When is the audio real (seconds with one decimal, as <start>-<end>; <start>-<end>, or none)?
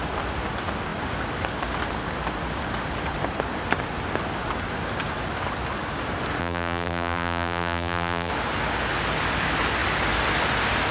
0.0-6.4; 8.3-10.9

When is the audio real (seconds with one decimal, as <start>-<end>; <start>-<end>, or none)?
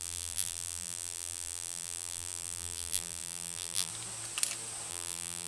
3.9-4.9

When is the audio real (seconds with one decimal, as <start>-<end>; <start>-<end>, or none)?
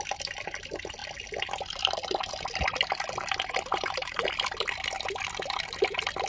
0.0-3.7; 4.2-6.3